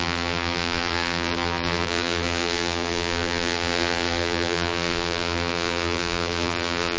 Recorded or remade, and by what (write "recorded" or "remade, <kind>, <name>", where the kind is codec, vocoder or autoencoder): remade, vocoder, BigVGAN v2